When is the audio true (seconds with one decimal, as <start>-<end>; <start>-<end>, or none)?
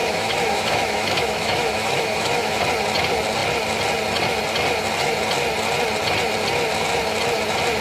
2.6-7.8